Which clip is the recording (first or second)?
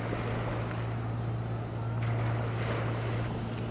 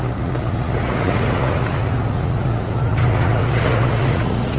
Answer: first